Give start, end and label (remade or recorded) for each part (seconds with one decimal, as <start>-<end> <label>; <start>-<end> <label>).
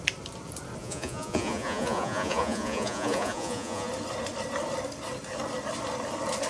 0.0-0.8 recorded; 0.8-3.9 remade; 3.9-6.5 recorded